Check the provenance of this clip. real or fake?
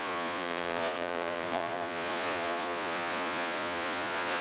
fake